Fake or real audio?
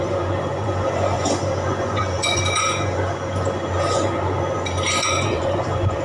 fake